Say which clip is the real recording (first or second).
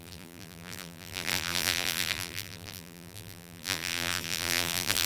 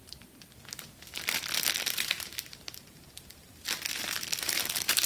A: second